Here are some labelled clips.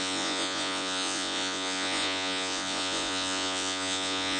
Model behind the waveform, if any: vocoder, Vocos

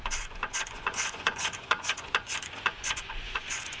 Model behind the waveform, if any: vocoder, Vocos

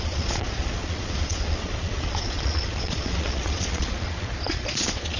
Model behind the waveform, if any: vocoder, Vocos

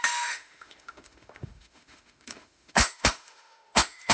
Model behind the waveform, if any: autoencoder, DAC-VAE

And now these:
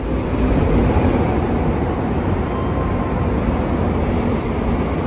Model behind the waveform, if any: none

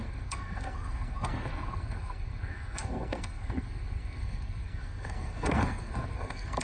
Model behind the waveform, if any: codec, SNAC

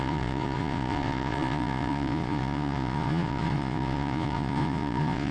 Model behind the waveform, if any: vocoder, Vocos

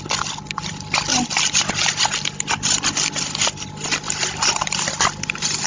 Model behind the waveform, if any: none